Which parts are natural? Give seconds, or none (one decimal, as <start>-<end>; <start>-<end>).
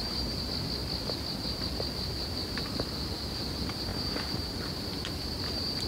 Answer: 0.0-5.9